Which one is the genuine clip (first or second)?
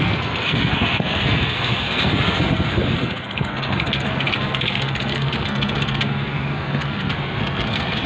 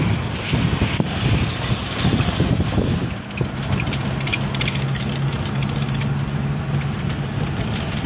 second